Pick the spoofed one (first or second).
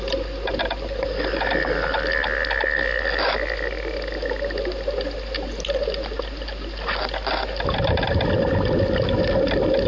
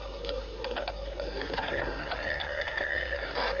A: second